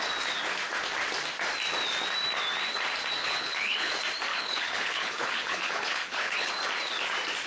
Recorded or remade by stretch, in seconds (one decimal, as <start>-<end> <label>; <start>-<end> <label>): 0.0-3.2 recorded; 3.2-3.9 remade; 3.9-4.3 recorded; 4.3-6.5 remade; 6.5-7.5 recorded